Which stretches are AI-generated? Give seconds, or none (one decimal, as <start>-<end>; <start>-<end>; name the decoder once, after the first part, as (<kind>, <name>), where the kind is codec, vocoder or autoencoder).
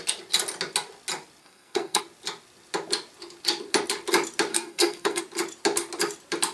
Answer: 1.4-2.0 (codec, SNAC); 4.5-5.2